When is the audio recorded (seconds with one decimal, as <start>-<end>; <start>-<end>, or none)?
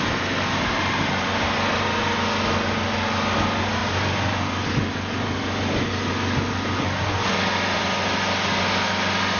0.0-9.4